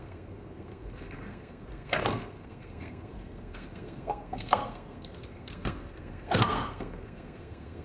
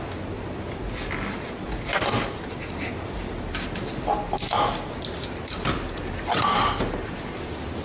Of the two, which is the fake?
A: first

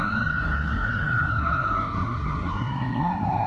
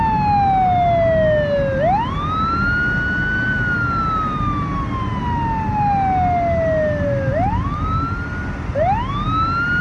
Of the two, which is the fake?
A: first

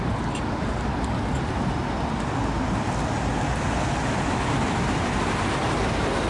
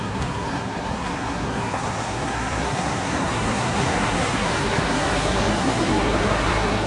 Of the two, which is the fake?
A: second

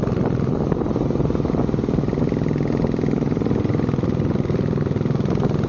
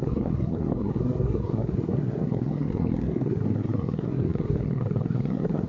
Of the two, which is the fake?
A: second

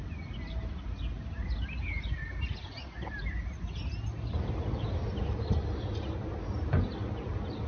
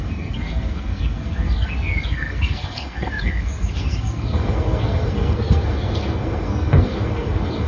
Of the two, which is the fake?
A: second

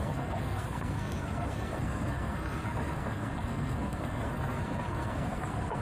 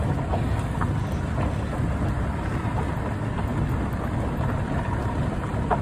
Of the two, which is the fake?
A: first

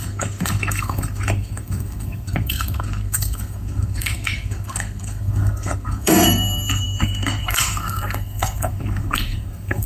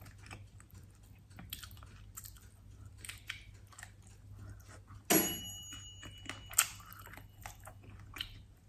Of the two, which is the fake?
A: first